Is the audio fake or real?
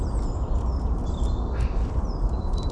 real